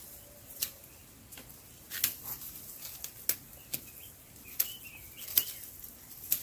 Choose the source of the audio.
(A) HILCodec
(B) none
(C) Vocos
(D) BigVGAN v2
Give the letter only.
B